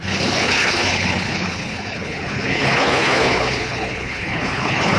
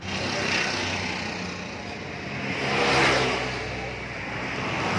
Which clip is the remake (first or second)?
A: first